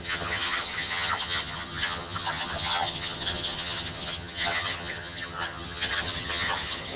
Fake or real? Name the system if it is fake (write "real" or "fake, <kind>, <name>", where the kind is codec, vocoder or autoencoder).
fake, vocoder, HiFi-GAN